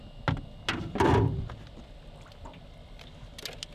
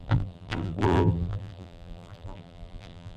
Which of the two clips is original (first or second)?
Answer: first